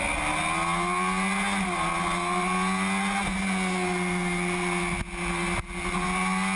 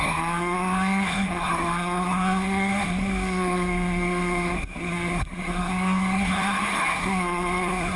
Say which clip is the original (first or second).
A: first